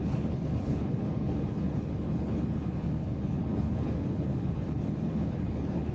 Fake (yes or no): yes